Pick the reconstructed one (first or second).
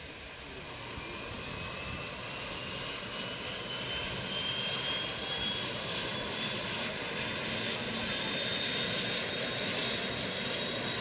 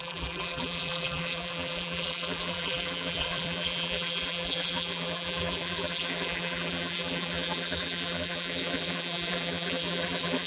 second